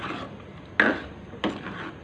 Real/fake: real